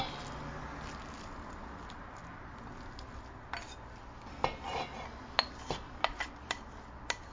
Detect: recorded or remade recorded